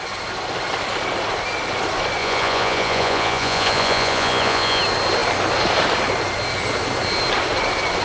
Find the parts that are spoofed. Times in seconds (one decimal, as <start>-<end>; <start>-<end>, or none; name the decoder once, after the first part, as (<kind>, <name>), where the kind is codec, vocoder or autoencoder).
2.2-4.8 (vocoder, Vocos)